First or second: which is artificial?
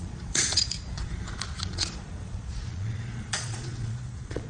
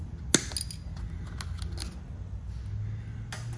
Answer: first